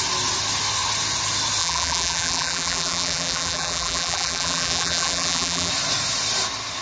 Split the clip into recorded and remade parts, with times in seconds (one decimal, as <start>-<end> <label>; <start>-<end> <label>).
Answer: 0.0-1.6 recorded; 1.6-5.7 remade; 5.7-6.8 recorded